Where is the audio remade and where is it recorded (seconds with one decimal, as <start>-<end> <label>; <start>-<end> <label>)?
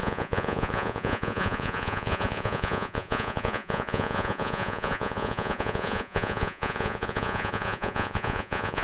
0.0-8.8 remade